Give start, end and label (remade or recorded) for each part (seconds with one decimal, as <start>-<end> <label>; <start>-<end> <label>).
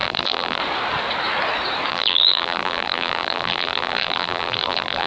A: 0.0-0.6 remade; 0.6-1.9 recorded; 1.9-5.1 remade